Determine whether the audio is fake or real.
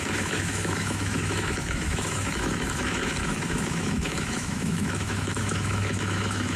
fake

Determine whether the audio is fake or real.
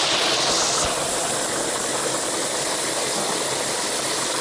real